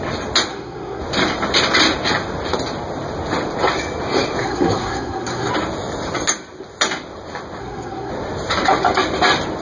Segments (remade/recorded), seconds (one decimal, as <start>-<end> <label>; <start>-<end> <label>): 0.0-0.5 recorded; 0.5-1.0 remade; 1.0-4.4 recorded; 4.4-5.5 remade; 5.5-7.6 recorded; 7.6-8.1 remade; 8.1-9.6 recorded